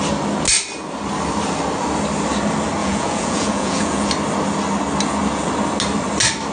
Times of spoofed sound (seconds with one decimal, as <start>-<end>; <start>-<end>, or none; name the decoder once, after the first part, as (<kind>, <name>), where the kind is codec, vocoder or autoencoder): 2.8-4.1 (vocoder, Vocos)